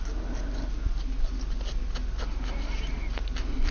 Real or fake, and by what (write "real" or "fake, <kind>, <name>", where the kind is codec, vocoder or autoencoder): real